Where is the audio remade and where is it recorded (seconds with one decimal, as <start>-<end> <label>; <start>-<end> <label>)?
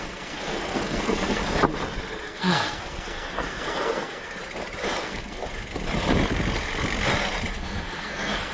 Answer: 0.0-1.4 remade; 1.4-2.2 recorded; 2.2-4.4 remade; 4.4-5.0 recorded; 5.0-5.4 remade; 5.4-7.6 recorded; 7.6-8.5 remade